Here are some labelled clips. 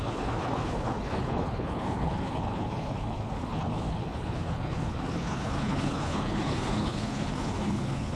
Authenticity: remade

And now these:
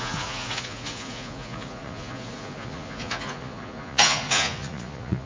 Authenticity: remade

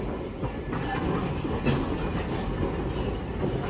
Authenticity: recorded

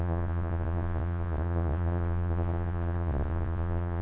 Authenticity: remade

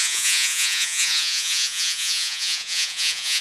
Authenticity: remade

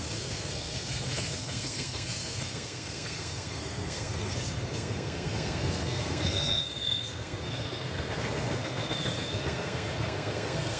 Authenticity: remade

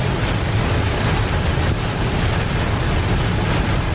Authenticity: recorded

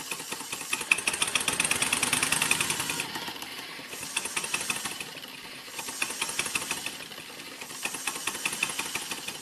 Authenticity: recorded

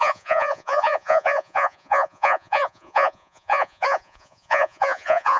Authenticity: remade